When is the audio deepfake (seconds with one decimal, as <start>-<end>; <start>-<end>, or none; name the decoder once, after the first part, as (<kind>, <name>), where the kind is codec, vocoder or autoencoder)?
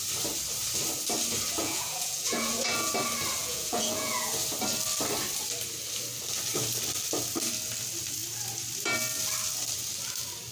1.6-2.9 (vocoder, Vocos); 3.4-4.3